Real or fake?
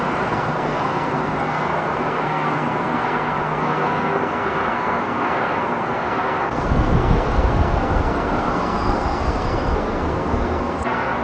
fake